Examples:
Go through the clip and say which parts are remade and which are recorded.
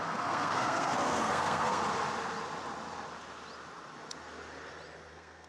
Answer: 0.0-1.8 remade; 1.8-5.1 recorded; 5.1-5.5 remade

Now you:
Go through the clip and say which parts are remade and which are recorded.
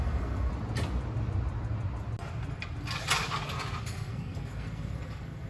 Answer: 0.0-0.5 remade; 0.5-3.8 recorded; 3.8-5.5 remade